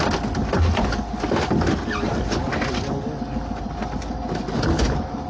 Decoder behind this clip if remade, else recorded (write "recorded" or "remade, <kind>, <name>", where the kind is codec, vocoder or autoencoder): recorded